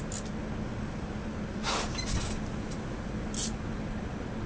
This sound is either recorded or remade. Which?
recorded